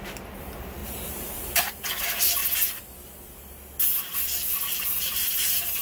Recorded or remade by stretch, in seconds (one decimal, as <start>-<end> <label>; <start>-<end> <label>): 0.0-2.4 remade; 2.4-4.6 recorded; 4.6-5.8 remade